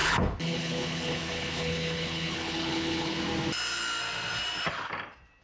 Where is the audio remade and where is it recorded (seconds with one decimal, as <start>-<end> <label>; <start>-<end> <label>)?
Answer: 0.0-3.2 remade; 3.2-5.4 recorded